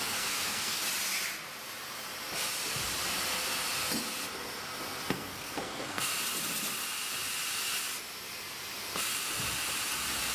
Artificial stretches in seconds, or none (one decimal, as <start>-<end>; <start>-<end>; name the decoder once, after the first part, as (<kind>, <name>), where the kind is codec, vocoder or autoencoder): 0.0-0.8 (codec, SNAC); 5.1-6.1